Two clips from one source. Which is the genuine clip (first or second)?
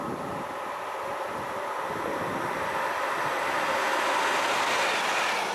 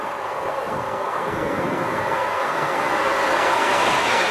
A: first